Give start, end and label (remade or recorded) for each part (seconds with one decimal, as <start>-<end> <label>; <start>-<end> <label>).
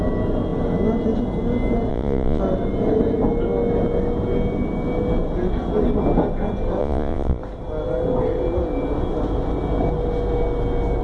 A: 0.0-1.9 recorded; 1.9-2.4 remade; 2.4-6.8 recorded; 6.8-7.4 remade; 7.4-11.0 recorded